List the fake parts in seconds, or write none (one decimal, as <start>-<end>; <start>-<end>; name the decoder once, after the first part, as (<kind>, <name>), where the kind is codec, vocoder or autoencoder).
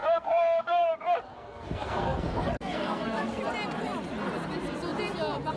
0.0-0.9 (codec, SNAC); 1.3-3.4